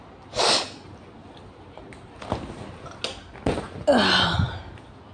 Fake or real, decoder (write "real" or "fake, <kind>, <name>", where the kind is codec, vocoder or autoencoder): real